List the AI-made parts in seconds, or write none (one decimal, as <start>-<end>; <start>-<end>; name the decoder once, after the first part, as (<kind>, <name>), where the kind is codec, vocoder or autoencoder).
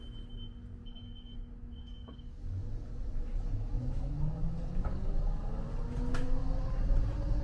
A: 0.8-5.2 (codec, DAC)